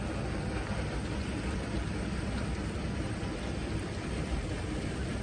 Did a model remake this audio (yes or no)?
no